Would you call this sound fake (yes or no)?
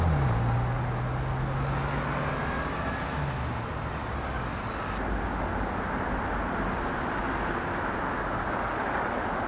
no